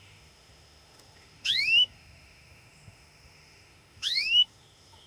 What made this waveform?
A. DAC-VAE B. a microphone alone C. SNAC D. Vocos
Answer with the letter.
A